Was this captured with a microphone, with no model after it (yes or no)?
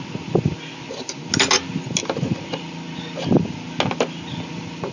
yes